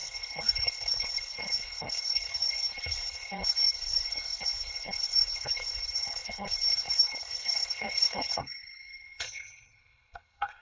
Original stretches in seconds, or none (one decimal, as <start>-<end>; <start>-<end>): none